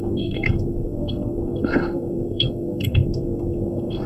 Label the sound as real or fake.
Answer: fake